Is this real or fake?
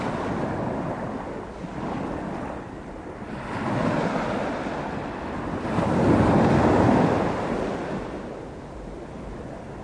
real